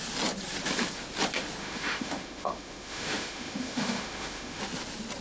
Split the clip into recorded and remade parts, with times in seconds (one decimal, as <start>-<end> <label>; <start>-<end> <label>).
0.0-1.6 recorded; 1.6-4.6 remade; 4.6-5.2 recorded